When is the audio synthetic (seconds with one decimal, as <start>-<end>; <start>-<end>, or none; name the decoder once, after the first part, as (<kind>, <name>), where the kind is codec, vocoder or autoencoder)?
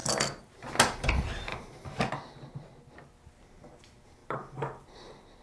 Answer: 1.5-2.1 (vocoder, BigVGAN v2); 4.2-4.9